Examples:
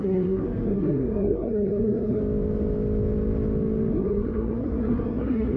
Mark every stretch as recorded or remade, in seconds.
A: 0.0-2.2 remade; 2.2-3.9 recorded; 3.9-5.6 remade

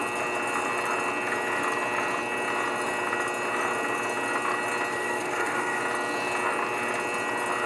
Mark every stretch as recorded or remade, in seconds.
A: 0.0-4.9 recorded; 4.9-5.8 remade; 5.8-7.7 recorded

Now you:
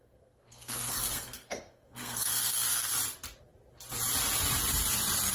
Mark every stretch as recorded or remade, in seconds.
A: 0.0-2.9 remade; 2.9-5.3 recorded